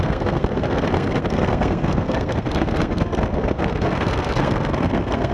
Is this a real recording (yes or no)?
no